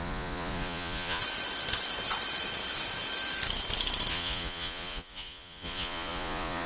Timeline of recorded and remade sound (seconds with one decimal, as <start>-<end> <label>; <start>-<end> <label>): 0.0-1.2 remade; 1.2-4.1 recorded; 4.1-6.7 remade